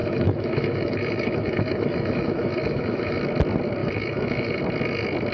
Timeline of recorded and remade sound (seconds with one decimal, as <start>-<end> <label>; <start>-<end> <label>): 0.0-3.2 remade; 3.2-3.8 recorded; 3.8-4.6 remade; 4.6-5.3 recorded

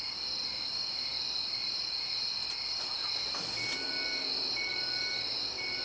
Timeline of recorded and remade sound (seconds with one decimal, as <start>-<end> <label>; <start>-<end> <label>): 0.0-5.8 recorded